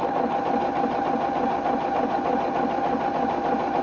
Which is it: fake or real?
real